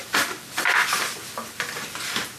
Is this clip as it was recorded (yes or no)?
no